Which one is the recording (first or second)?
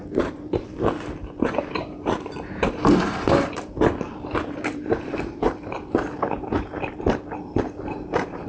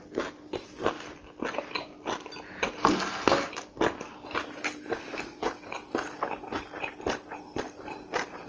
second